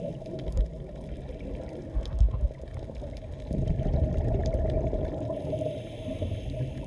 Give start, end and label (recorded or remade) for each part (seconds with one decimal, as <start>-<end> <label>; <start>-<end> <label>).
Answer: 0.0-6.9 recorded